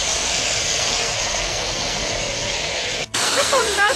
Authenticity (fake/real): fake